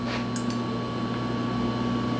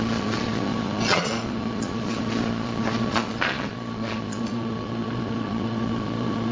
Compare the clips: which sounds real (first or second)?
first